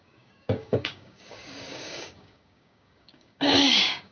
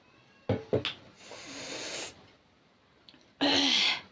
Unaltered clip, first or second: second